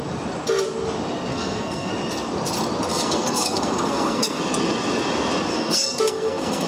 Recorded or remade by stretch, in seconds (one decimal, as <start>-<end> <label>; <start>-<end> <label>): 0.0-1.3 recorded; 1.3-1.9 remade; 1.9-2.9 recorded; 2.9-4.4 remade; 4.4-5.5 recorded; 5.5-6.7 remade